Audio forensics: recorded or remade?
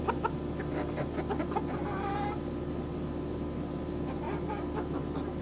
recorded